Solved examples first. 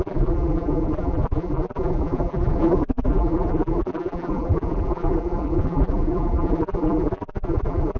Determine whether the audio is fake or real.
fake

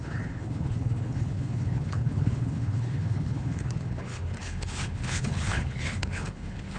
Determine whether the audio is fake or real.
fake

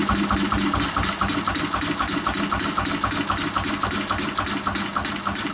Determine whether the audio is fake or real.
real